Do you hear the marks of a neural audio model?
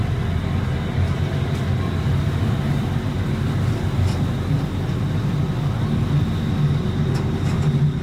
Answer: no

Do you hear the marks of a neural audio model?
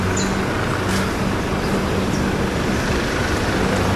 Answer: no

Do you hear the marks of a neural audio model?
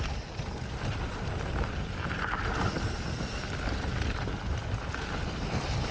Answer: no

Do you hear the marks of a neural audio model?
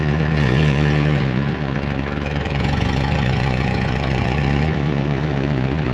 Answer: yes